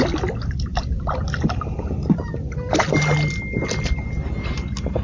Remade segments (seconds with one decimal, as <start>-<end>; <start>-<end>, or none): none